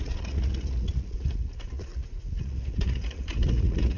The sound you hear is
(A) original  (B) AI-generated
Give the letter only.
B